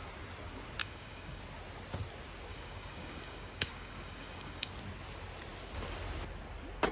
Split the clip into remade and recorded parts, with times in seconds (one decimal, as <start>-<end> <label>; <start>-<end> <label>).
0.0-0.8 recorded; 0.8-1.4 remade; 1.4-2.5 recorded; 2.5-4.7 remade; 4.7-6.9 recorded